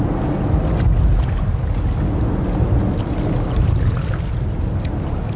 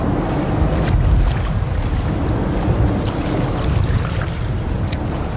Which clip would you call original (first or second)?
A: first